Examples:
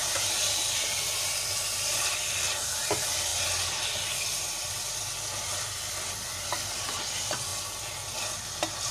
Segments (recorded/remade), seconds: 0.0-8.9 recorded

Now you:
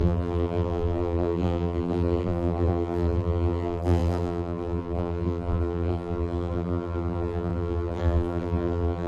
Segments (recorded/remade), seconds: 0.0-9.1 remade

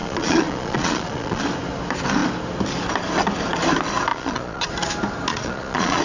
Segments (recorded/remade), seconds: 0.0-1.4 remade; 1.4-4.1 recorded; 4.1-4.7 remade; 4.7-5.3 recorded; 5.3-6.0 remade